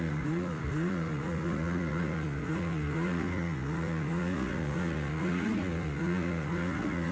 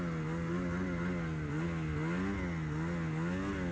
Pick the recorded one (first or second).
second